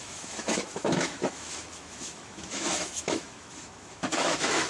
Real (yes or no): no